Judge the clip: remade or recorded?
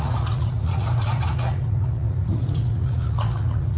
remade